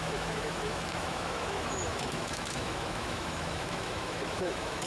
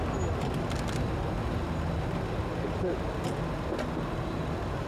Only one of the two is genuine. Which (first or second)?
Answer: second